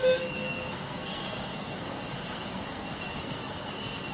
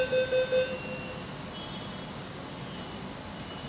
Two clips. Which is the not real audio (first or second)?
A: first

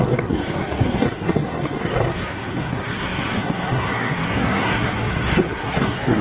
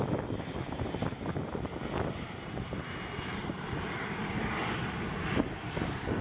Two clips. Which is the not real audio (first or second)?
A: first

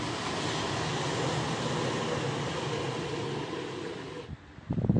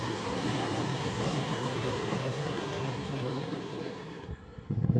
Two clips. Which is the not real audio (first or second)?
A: second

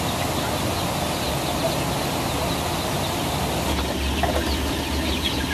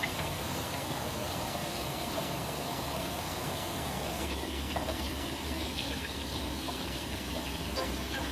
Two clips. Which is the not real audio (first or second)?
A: second